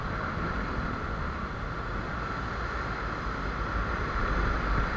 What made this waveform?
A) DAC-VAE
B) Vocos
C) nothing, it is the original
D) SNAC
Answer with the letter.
C